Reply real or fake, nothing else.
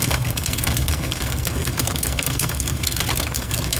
fake